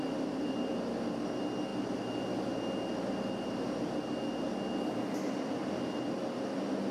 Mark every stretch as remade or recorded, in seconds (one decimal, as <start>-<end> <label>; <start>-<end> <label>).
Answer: 0.0-6.9 recorded